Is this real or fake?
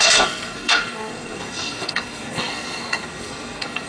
fake